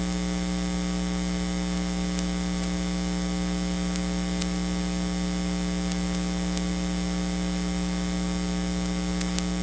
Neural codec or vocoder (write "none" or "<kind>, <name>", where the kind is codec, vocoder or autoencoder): none